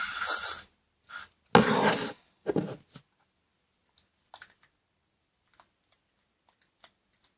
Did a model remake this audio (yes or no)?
no